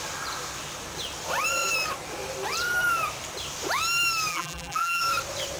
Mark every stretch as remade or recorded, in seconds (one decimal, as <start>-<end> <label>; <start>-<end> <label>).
0.0-4.3 recorded; 4.3-5.0 remade; 5.0-5.6 recorded